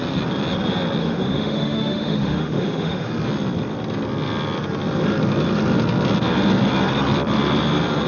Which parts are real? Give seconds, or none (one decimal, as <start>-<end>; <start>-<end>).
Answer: 0.0-1.0; 3.1-8.1